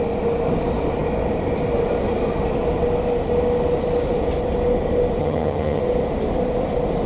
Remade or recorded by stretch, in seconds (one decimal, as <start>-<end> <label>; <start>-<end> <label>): 0.0-5.2 recorded; 5.2-5.8 remade; 5.8-7.1 recorded